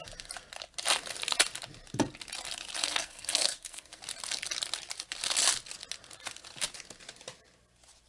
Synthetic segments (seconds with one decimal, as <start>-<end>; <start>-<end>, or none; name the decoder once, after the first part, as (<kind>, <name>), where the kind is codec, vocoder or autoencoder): 2.8-4.0 (codec, SNAC)